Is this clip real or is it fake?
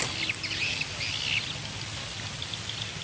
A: real